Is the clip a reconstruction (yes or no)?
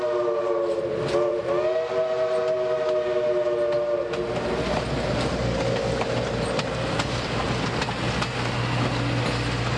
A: no